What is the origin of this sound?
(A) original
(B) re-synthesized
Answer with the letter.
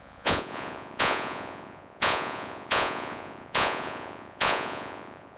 B